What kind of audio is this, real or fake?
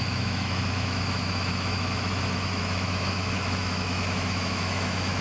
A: fake